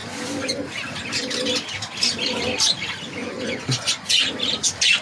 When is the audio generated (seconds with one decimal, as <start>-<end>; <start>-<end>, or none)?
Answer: 3.2-4.2